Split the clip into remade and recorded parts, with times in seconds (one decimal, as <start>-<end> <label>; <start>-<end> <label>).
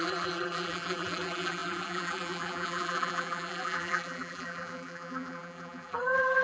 0.0-6.4 remade